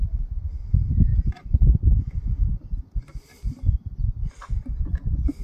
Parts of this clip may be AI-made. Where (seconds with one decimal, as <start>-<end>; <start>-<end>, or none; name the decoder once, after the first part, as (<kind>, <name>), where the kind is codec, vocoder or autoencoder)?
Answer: 1.1-1.8 (vocoder, BigVGAN v2)